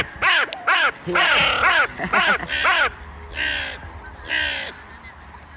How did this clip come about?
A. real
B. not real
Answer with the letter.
A